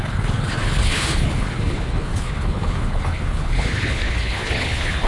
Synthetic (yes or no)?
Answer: yes